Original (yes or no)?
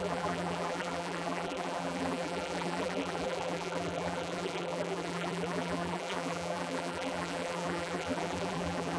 no